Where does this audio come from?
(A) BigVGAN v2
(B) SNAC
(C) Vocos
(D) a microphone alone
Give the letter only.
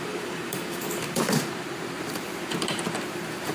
A